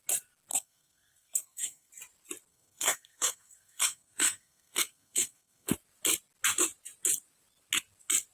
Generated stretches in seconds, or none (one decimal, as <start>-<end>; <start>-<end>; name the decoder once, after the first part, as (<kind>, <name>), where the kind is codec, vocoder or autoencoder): 0.5-1.9 (codec, SNAC); 2.5-5.7